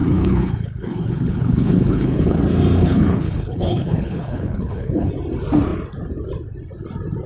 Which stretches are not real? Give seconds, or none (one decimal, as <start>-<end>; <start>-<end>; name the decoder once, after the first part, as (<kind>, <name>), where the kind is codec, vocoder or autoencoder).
0.0-2.4 (codec, HILCodec); 2.8-5.1

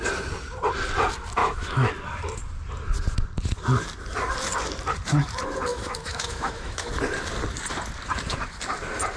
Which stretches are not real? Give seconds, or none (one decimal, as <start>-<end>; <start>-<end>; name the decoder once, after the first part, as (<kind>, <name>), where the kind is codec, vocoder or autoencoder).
1.4-1.9 (autoencoder, DAC-VAE); 5.7-6.9

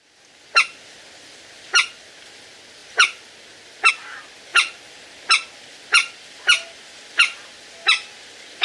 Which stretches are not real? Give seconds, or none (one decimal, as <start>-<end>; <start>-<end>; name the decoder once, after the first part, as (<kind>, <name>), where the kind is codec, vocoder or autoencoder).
4.5-5.3 (vocoder, BigVGAN v2)

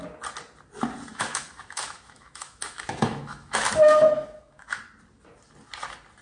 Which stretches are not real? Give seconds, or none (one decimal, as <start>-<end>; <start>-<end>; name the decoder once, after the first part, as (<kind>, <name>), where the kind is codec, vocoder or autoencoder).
1.1-4.8 (autoencoder, DAC-VAE)

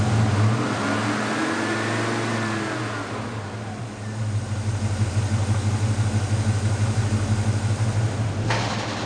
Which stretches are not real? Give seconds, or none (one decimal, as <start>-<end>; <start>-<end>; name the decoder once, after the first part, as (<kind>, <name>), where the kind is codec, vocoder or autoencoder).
none

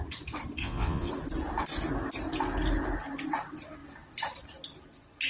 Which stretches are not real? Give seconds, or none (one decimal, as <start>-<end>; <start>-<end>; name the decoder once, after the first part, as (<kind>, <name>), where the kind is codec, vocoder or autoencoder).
0.6-1.1 (vocoder, Vocos)

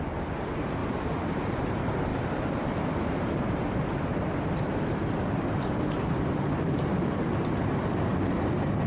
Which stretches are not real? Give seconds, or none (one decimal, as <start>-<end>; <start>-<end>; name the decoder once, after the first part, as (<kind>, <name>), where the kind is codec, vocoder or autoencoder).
0.0-2.1 (vocoder, BigVGAN v2); 3.1-8.1